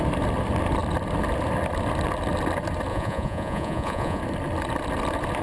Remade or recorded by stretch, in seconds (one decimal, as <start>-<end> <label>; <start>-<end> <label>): 0.0-2.9 recorded; 2.9-4.2 remade; 4.2-5.4 recorded